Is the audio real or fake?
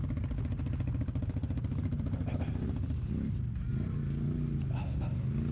real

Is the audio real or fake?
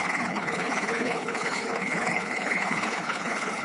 fake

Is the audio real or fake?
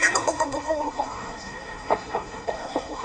fake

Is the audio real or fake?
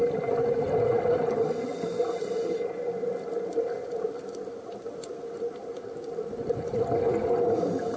real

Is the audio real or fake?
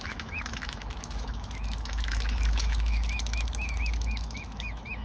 fake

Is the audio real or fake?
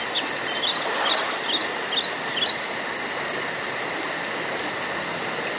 real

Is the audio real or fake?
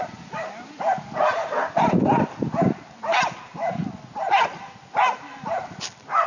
real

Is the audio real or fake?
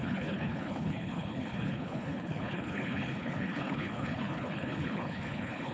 fake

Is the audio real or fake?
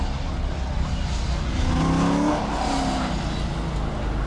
real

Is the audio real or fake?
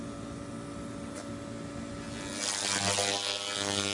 real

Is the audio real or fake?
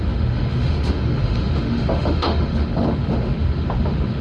fake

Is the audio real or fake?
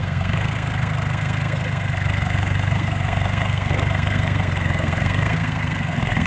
fake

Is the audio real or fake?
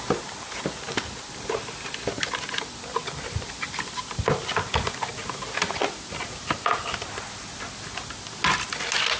real